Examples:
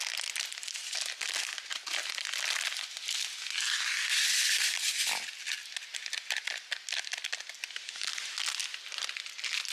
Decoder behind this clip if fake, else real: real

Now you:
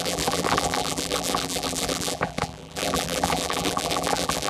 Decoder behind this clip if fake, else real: fake, vocoder, BigVGAN v2